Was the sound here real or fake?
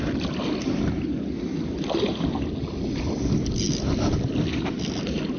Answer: real